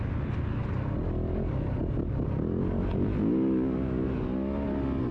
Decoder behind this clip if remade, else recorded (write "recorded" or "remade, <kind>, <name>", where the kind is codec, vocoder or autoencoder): recorded